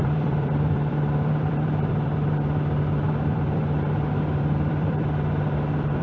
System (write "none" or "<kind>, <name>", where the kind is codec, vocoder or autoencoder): vocoder, BigVGAN v2